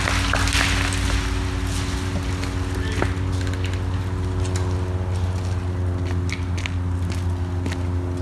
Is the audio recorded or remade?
recorded